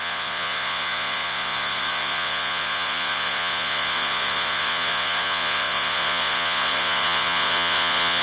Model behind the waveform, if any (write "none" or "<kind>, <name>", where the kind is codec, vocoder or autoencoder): vocoder, Vocos